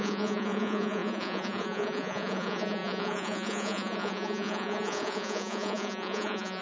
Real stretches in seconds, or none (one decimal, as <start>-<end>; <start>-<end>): none